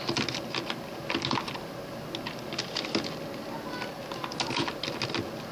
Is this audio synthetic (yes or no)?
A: no